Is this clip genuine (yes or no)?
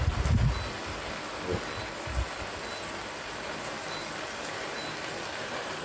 yes